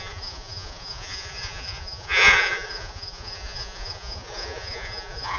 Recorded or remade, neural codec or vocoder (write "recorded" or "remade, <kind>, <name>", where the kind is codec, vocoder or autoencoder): remade, vocoder, Vocos